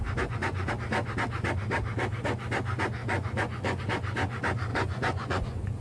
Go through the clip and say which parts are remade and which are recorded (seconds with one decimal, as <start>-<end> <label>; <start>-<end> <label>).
0.0-0.7 remade; 0.7-3.0 recorded; 3.0-3.8 remade; 3.8-4.7 recorded; 4.7-5.8 remade